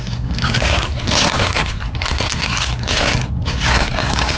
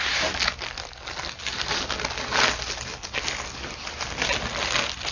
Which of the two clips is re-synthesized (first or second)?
first